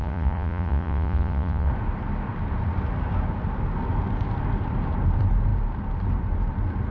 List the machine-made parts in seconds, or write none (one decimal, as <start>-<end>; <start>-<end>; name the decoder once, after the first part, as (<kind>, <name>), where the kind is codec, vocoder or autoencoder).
0.0-1.7 (vocoder, Vocos)

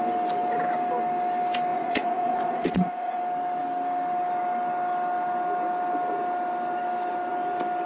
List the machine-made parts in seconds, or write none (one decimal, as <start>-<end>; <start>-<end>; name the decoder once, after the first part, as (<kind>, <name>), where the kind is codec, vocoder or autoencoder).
1.7-3.2 (vocoder, Vocos)

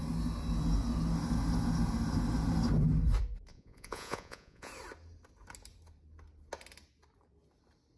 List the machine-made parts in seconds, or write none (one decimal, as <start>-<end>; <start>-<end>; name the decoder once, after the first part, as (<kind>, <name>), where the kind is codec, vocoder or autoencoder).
3.5-4.7 (vocoder, Vocos)

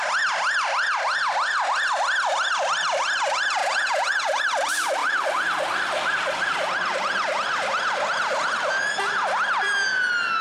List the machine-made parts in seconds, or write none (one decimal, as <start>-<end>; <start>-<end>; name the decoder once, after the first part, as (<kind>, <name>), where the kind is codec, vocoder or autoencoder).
3.6-4.4 (vocoder, Vocos)

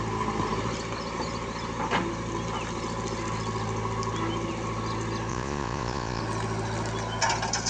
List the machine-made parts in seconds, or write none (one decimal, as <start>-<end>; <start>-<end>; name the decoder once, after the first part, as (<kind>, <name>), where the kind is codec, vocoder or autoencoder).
5.3-6.2 (vocoder, Vocos)

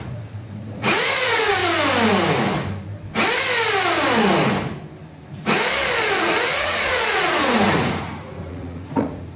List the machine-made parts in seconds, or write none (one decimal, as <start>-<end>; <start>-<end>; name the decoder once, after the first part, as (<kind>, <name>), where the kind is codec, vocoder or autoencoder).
0.0-1.6 (vocoder, Vocos); 6.2-9.4